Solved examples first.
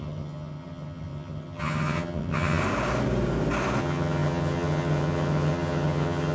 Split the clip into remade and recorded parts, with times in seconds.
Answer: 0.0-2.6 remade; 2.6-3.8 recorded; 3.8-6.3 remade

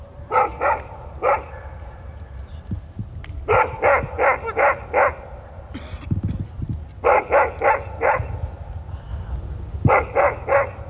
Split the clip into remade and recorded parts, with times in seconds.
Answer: 0.0-10.9 recorded